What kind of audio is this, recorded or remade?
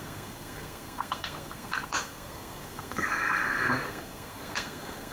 remade